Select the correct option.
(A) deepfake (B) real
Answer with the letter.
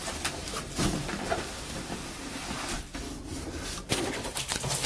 B